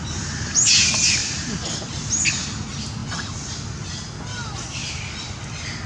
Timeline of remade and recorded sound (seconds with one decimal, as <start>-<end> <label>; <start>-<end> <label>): 0.0-1.2 recorded; 1.2-2.1 remade; 2.1-5.9 recorded